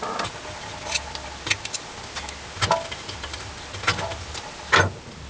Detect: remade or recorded recorded